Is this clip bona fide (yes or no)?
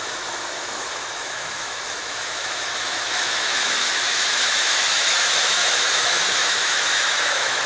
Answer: no